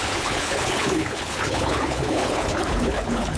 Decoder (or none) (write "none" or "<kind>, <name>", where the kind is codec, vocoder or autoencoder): codec, HILCodec